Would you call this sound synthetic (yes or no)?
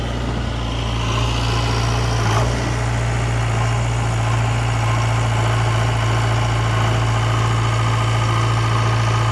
no